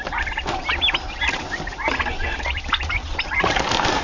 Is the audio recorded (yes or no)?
yes